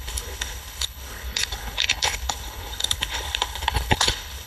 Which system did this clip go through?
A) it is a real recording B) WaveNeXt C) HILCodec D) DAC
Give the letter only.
C